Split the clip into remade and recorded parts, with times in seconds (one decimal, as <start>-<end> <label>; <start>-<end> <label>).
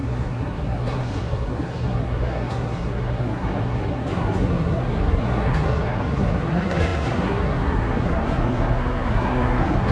0.0-9.9 remade